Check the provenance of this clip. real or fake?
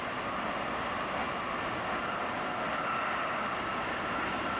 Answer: real